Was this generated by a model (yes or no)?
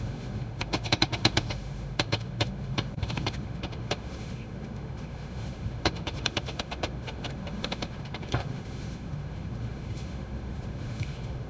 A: yes